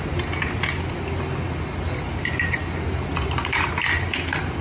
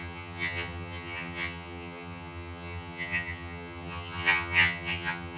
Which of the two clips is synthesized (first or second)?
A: second